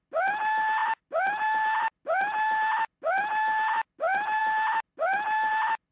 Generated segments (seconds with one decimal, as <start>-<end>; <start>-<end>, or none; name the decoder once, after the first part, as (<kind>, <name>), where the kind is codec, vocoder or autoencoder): none